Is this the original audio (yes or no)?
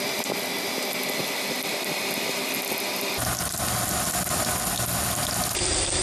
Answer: yes